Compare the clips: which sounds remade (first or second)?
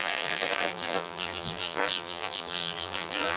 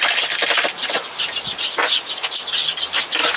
first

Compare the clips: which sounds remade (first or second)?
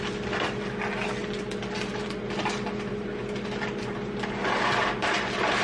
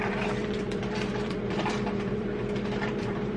second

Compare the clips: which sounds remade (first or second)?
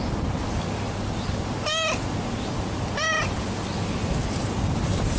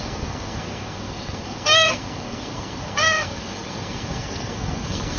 second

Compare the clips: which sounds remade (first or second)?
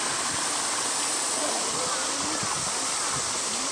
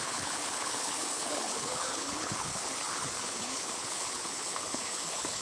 second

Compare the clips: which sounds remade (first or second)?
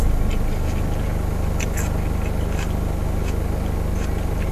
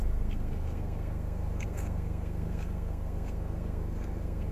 second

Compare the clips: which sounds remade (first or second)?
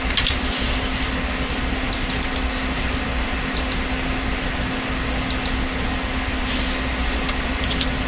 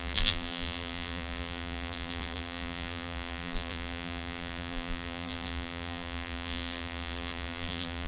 second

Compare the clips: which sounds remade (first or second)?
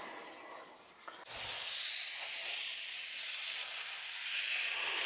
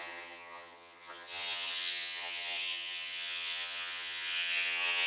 second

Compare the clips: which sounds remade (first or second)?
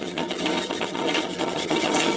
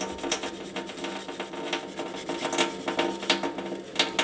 first